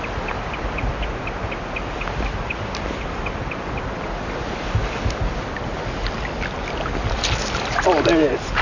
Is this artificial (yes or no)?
no